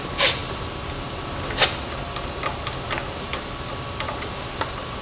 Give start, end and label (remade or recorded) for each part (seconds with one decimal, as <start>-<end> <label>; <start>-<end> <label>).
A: 0.0-5.0 recorded